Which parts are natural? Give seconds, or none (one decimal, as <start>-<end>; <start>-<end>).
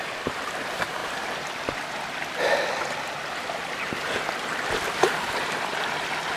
1.0-4.7